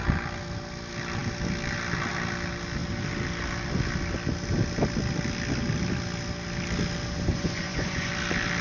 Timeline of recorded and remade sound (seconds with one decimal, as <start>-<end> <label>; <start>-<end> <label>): 0.0-7.3 recorded; 7.3-8.1 remade; 8.1-8.6 recorded